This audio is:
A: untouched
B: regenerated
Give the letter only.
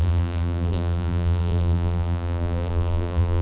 B